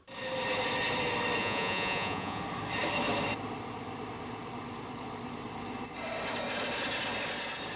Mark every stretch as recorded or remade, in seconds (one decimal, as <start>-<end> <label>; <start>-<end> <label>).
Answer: 0.0-1.4 recorded; 1.4-2.4 remade; 2.4-7.8 recorded